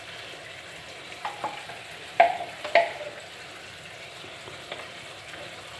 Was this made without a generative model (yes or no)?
yes